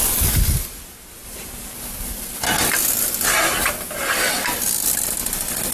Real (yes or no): yes